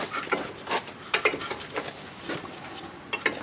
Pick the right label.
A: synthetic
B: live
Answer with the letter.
B